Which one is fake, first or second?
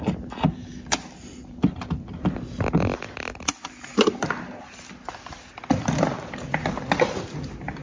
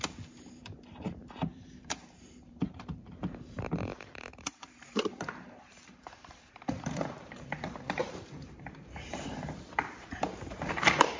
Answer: second